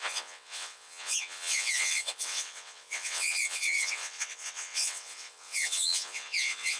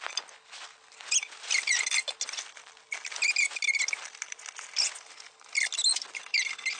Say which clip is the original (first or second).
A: second